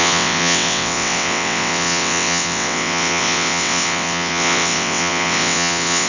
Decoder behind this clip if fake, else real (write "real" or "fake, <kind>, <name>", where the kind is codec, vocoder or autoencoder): fake, vocoder, WaveNeXt